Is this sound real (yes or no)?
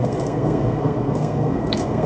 no